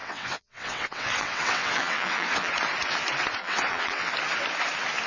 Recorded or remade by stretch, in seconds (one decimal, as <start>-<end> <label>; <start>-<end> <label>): 0.0-2.5 remade; 2.5-3.4 recorded; 3.4-4.1 remade; 4.1-5.1 recorded